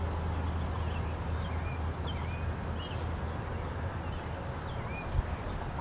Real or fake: real